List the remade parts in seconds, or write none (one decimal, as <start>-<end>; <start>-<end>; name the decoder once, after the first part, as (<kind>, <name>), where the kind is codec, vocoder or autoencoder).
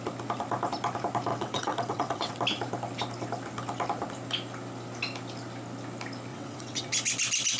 1.3-2.3 (vocoder, WaveNeXt); 6.3-6.9